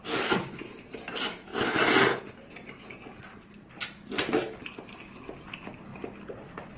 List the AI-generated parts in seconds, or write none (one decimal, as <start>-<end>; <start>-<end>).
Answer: none